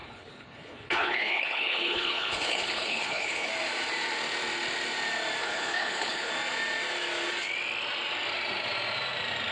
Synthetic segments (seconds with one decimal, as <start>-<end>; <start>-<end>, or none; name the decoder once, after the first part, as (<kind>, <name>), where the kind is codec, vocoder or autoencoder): 0.0-3.5 (codec, HILCodec); 5.4-6.3